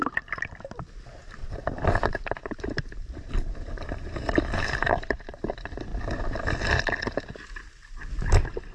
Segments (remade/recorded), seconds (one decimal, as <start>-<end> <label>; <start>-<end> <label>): 0.0-1.4 recorded; 1.4-5.5 remade; 5.5-5.9 recorded; 5.9-6.5 remade; 6.5-8.7 recorded